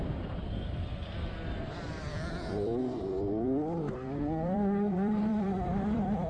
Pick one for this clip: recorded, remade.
remade